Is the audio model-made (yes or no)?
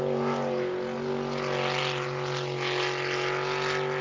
no